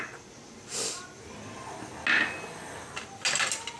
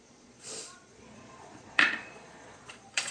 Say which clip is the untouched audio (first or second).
first